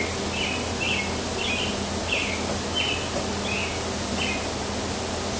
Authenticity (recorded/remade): recorded